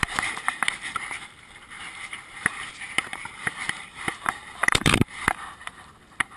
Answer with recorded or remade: remade